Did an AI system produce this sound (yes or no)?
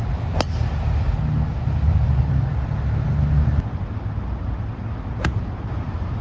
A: no